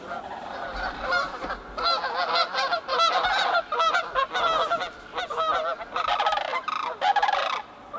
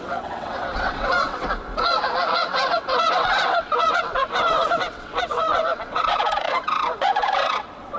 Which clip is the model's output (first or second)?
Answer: second